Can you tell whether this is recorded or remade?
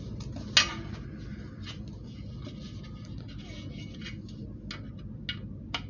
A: recorded